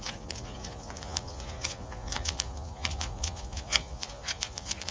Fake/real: fake